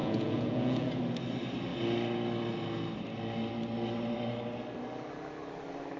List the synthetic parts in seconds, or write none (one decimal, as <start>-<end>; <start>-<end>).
0.0-1.0